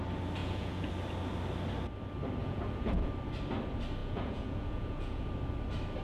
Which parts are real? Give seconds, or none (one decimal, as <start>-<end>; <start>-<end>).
0.0-0.4; 0.9-2.4; 3.1-4.0; 5.3-6.0